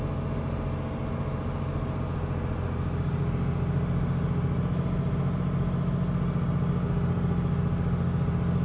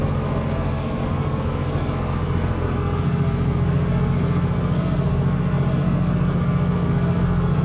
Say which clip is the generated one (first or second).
second